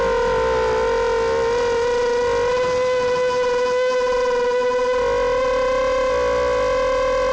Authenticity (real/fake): real